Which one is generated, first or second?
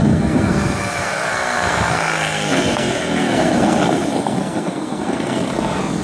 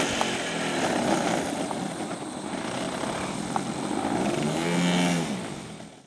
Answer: first